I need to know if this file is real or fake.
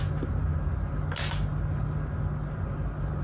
real